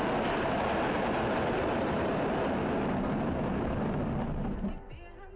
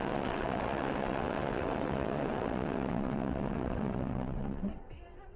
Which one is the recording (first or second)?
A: first